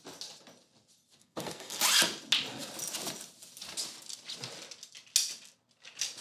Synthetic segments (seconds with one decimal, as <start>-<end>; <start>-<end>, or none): 1.2-1.8

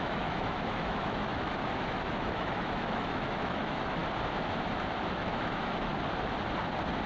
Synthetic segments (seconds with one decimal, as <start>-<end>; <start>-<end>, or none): 0.0-4.0; 5.2-5.9

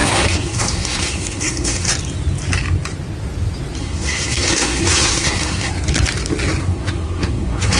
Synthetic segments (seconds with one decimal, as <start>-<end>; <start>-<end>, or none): 0.0-1.9; 3.8-5.7; 6.7-7.8

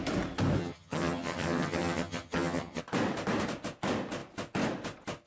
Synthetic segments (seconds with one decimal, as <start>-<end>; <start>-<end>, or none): 0.6-2.8